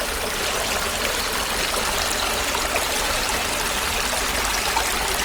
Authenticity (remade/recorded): recorded